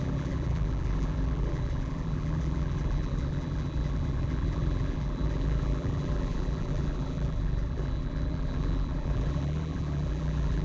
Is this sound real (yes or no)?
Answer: no